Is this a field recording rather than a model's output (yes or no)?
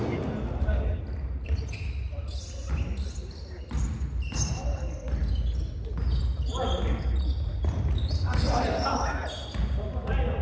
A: yes